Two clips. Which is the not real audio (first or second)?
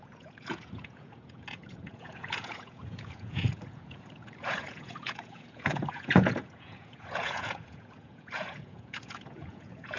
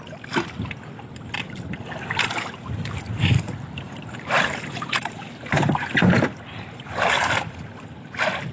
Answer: first